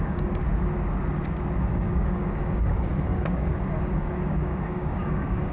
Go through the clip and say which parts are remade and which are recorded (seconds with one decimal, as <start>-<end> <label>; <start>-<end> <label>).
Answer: 0.0-0.4 remade; 0.4-1.7 recorded; 1.7-5.5 remade